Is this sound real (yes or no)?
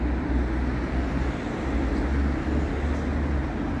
yes